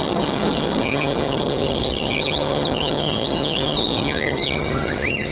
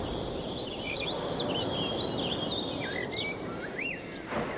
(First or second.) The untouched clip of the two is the second